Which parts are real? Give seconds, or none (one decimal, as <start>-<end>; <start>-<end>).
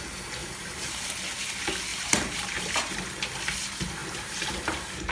0.0-0.4; 1.1-1.9; 2.9-4.0